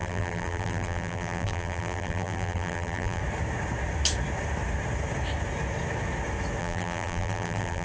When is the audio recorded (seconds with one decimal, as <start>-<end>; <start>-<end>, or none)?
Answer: 3.2-6.6

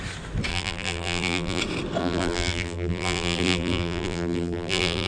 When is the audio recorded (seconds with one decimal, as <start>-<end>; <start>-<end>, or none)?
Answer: 0.0-0.5; 1.6-2.0